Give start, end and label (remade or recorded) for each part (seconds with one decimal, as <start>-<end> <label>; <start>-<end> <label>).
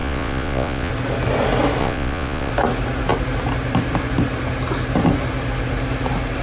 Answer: 0.0-0.9 remade; 0.9-1.8 recorded; 1.8-2.5 remade; 2.5-6.4 recorded